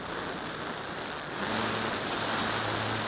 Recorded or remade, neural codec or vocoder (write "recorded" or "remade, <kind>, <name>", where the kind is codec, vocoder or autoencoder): recorded